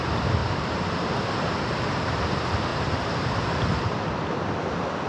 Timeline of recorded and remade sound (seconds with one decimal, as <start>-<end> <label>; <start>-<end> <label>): 0.0-0.4 recorded; 0.4-0.9 remade; 0.9-2.7 recorded; 2.7-4.1 remade; 4.1-5.1 recorded